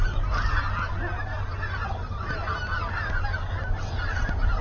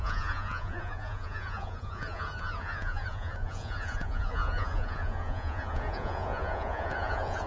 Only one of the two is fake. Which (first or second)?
second